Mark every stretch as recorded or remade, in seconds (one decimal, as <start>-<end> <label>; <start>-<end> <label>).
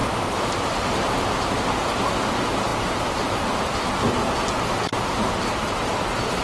0.0-1.6 remade; 1.6-2.7 recorded; 2.7-3.8 remade; 3.8-6.4 recorded